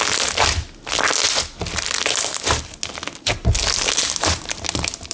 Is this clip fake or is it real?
real